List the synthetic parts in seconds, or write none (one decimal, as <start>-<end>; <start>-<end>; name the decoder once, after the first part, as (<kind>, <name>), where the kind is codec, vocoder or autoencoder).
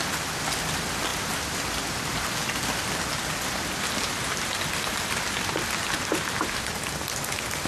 none